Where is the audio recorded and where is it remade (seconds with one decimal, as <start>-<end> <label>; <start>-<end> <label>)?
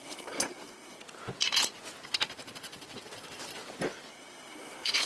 0.0-1.0 remade; 1.0-4.1 recorded; 4.1-5.1 remade